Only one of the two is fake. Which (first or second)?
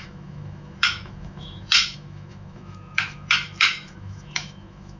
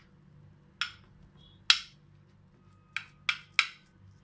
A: first